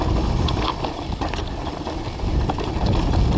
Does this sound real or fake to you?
real